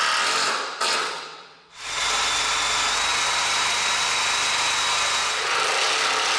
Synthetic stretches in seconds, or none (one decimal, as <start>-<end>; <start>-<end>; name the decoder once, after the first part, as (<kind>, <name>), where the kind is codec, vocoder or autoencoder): 1.0-2.0 (vocoder, WaveNeXt)

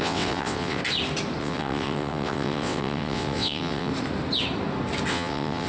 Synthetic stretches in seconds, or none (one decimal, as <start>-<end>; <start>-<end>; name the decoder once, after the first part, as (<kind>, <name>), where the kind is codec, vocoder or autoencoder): 0.0-0.8 (vocoder, WaveNeXt); 1.4-3.9; 5.1-5.7

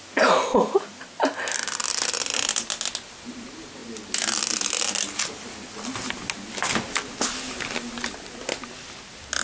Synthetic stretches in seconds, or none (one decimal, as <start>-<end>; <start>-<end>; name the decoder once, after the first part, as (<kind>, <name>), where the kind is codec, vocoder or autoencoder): none

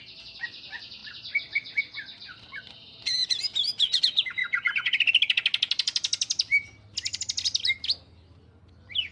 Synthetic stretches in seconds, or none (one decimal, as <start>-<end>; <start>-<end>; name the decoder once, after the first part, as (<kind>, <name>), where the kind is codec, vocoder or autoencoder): none

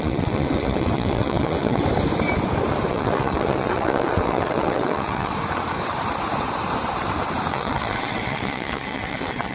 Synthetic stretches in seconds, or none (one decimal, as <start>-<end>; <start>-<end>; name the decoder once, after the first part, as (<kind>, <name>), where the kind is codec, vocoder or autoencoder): 0.0-1.8 (vocoder, WaveNeXt); 2.9-5.3; 7.5-9.5